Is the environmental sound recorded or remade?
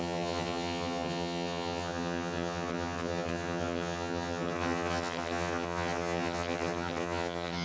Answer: remade